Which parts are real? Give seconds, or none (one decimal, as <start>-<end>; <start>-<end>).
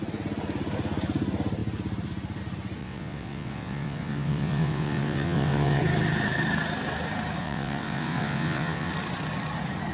0.0-2.8; 5.8-7.4; 8.9-9.9